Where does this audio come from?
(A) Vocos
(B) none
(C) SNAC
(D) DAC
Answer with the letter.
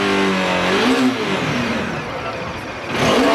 B